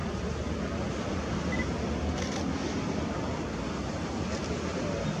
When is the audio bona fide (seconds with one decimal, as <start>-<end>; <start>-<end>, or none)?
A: 0.0-5.2